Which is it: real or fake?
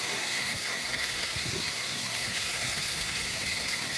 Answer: fake